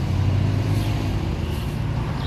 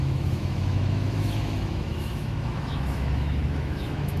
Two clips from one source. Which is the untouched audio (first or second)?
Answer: first